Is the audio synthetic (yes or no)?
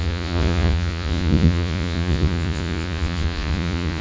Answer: yes